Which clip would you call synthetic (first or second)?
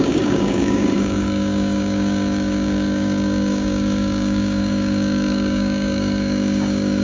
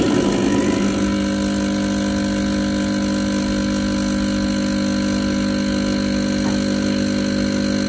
first